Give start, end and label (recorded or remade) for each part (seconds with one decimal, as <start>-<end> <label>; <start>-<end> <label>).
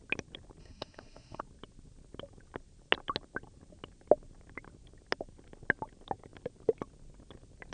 0.0-0.6 recorded; 0.6-1.4 remade; 1.4-7.7 recorded